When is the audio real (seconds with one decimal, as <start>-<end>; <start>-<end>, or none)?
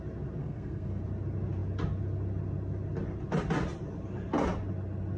0.0-0.4; 1.0-5.2